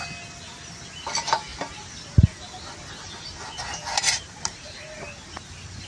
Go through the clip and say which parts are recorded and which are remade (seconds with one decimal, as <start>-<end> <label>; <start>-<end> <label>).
0.0-5.9 recorded